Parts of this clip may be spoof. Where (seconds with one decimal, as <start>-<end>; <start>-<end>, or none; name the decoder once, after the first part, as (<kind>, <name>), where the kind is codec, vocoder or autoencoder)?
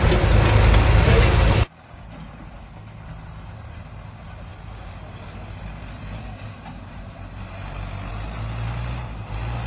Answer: none